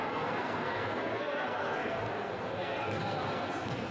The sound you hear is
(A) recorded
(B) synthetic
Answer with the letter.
B